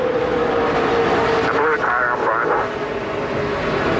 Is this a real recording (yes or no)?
yes